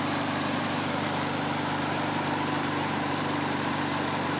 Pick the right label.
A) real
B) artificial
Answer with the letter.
B